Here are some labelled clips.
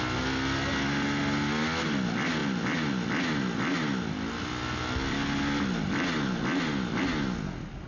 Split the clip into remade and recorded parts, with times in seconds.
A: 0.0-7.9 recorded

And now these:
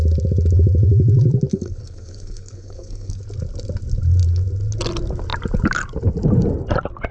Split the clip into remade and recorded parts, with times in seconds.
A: 0.0-1.5 recorded; 1.5-3.2 remade; 3.2-7.1 recorded

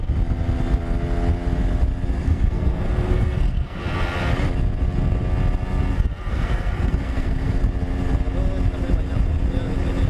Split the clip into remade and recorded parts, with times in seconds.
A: 0.0-2.2 recorded; 2.2-3.8 remade; 3.8-6.3 recorded; 6.3-7.6 remade; 7.6-10.1 recorded

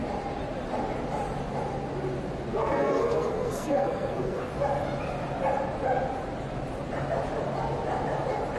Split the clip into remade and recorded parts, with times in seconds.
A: 0.0-2.5 recorded; 2.5-4.5 remade; 4.5-8.6 recorded